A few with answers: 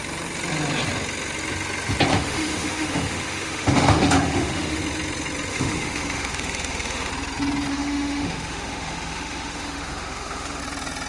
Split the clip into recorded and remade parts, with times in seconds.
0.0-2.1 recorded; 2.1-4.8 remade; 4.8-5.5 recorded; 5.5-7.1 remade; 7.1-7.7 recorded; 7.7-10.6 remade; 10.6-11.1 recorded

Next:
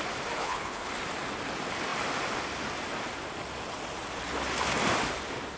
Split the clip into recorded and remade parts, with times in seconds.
0.0-0.4 recorded; 0.4-0.9 remade; 0.9-5.6 recorded

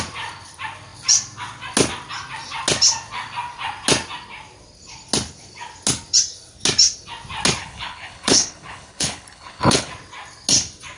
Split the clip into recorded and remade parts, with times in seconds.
0.0-7.6 recorded; 7.6-9.9 remade; 9.9-11.0 recorded

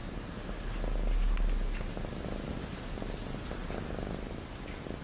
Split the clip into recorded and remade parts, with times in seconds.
0.0-5.0 recorded

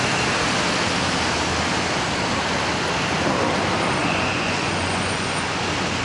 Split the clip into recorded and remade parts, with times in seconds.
0.0-4.0 recorded; 4.0-5.6 remade; 5.6-6.0 recorded

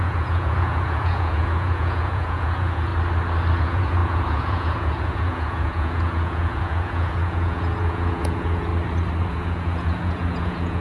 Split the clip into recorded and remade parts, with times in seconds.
0.0-2.9 remade; 2.9-3.6 recorded; 3.6-8.7 remade; 8.7-9.3 recorded; 9.3-10.8 remade